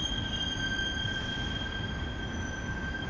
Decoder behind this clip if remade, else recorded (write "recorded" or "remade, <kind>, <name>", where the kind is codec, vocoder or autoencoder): recorded